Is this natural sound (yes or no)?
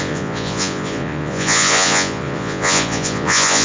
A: no